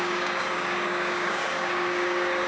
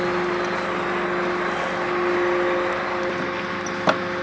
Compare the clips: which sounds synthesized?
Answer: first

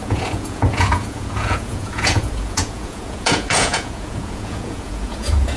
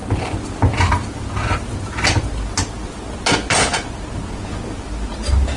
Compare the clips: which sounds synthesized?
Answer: first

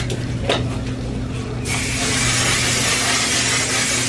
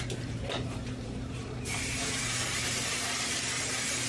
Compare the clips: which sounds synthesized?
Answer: second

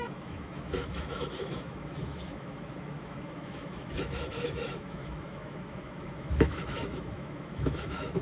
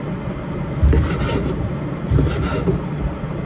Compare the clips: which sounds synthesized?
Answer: first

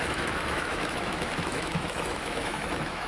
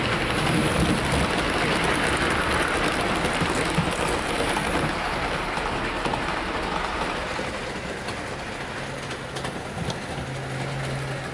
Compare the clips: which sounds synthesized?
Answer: first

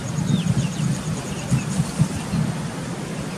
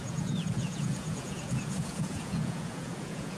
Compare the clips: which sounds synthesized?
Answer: second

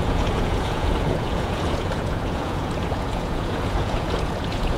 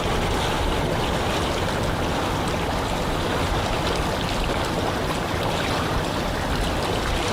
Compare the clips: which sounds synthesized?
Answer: first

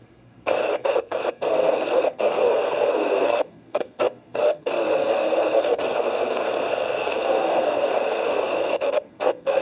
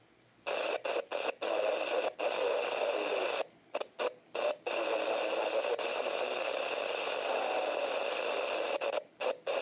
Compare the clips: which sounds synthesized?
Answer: first